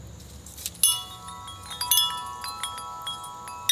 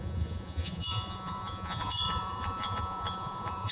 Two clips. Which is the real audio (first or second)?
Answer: first